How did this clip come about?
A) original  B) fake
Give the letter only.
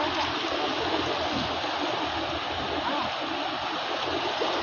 A